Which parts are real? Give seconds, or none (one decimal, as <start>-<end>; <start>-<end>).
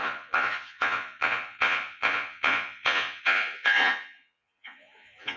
none